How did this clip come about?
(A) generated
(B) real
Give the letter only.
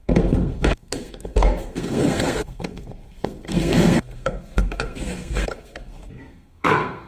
A